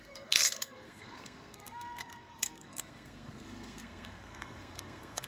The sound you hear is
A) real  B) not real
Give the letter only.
B